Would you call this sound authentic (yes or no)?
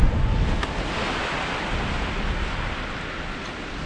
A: yes